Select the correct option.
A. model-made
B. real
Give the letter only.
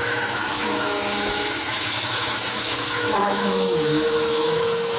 A